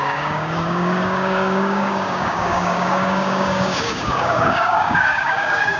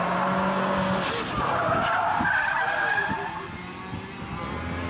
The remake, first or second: first